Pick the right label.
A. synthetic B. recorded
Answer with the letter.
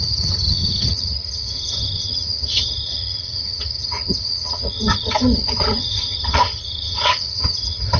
A